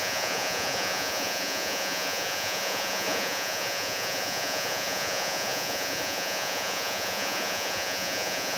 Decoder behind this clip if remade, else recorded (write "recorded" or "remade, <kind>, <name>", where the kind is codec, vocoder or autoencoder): remade, vocoder, Vocos